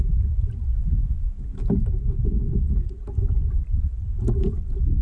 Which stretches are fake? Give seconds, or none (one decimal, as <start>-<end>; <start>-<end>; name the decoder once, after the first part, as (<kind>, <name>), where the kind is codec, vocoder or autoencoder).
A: none